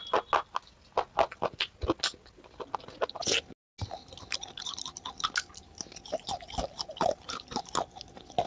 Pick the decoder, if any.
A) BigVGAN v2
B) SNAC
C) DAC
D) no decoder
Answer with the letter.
D